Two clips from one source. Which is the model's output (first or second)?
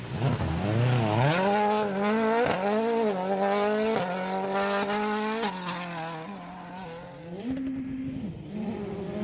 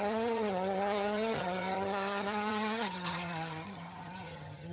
second